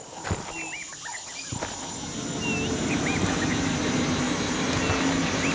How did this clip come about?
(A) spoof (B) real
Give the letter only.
B